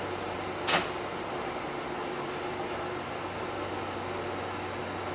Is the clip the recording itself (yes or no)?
yes